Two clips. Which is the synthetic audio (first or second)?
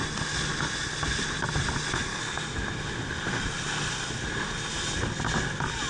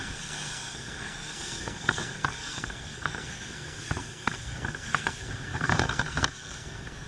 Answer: second